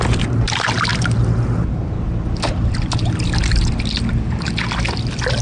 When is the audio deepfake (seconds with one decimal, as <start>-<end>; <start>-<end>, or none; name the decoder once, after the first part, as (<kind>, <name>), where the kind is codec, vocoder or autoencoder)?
none